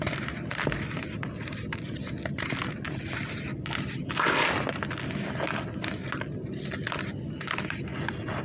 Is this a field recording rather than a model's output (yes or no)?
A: yes